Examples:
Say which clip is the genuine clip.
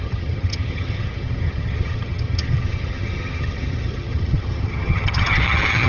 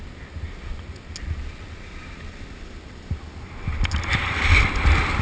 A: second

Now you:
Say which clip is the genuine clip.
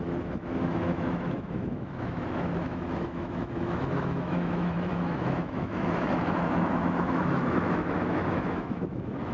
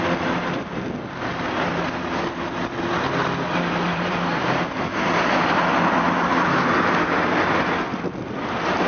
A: second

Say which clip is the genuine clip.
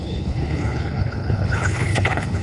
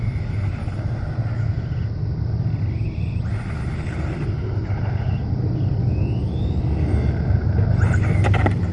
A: second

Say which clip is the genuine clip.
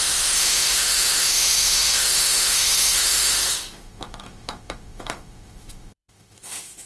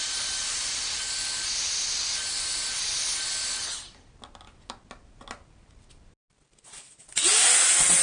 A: second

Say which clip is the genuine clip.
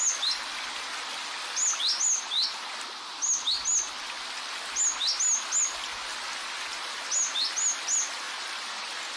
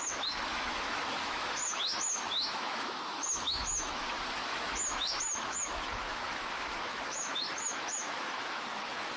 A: first